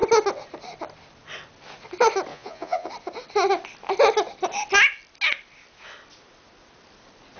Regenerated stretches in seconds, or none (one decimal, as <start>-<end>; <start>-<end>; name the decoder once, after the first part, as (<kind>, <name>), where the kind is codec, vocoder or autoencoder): 2.3-2.9 (vocoder, Vocos)